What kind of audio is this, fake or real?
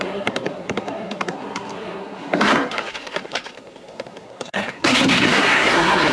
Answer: fake